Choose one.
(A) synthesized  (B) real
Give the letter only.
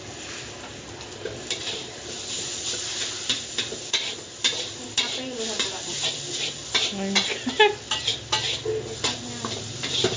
B